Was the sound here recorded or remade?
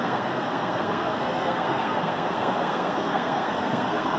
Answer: remade